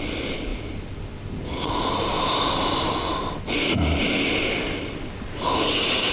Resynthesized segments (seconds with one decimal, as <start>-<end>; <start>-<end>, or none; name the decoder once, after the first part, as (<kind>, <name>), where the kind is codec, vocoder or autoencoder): none